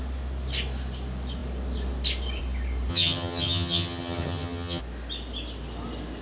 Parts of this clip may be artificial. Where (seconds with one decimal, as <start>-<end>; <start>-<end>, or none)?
2.9-4.8